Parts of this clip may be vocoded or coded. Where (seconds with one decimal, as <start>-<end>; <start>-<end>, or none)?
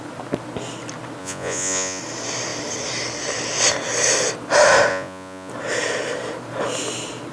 1.2-2.0; 4.9-5.5